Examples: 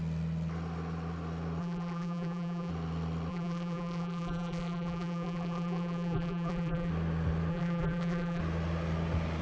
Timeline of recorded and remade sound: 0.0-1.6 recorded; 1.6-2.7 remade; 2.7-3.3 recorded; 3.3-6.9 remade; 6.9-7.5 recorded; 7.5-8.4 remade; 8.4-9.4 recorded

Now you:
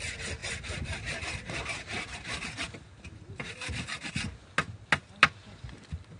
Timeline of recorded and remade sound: 0.0-0.4 recorded; 0.4-4.1 remade; 4.1-6.2 recorded

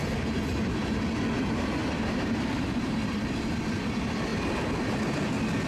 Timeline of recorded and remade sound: 0.0-1.8 recorded; 1.8-3.5 remade; 3.5-5.7 recorded

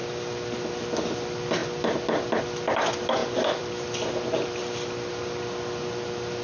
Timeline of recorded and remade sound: 0.0-0.6 remade; 0.6-3.2 recorded; 3.2-3.7 remade; 3.7-6.4 recorded

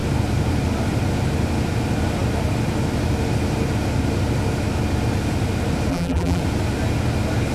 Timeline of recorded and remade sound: 0.0-5.9 recorded; 5.9-6.4 remade; 6.4-7.5 recorded

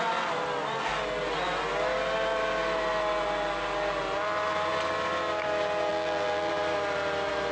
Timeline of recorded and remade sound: 0.0-5.9 recorded; 5.9-6.5 remade; 6.5-7.5 recorded

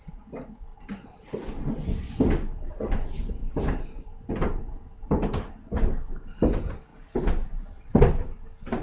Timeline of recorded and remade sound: 0.0-0.7 recorded; 0.7-1.3 remade; 1.3-3.4 recorded; 3.4-5.7 remade; 5.7-6.9 recorded; 6.9-8.0 remade; 8.0-8.8 recorded